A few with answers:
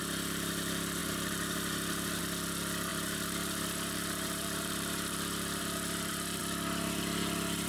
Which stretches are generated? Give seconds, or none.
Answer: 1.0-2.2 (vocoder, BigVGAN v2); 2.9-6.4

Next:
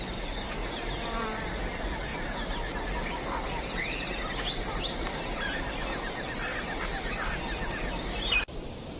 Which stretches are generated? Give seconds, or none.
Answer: 0.6-1.4 (vocoder, BigVGAN v2)

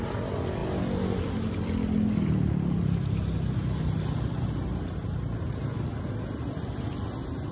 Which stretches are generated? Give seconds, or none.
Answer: none

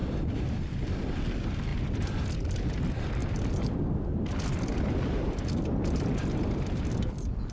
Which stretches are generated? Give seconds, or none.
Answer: 0.0-1.2 (vocoder, BigVGAN v2); 3.2-6.8

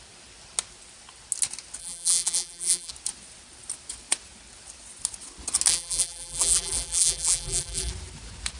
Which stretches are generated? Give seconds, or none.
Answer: 1.8-2.9 (vocoder, BigVGAN v2); 5.7-7.9

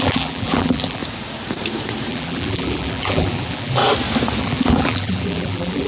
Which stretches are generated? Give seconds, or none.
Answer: 0.0-1.0 (vocoder, BigVGAN v2); 2.1-3.8; 4.4-5.9

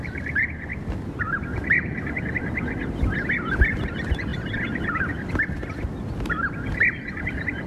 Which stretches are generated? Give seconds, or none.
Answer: 4.3-5.3 (vocoder, BigVGAN v2)

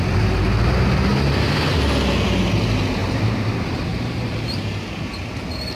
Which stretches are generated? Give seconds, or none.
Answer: 3.0-3.5 (vocoder, BigVGAN v2); 3.9-5.1